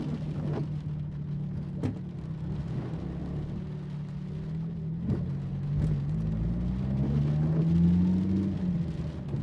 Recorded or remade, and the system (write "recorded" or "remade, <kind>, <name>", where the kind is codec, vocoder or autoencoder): recorded